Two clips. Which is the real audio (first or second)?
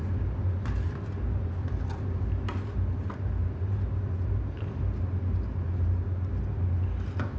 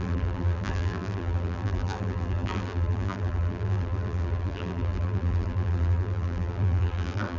first